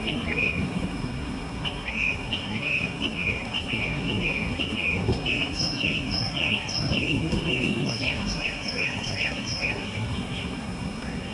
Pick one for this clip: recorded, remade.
remade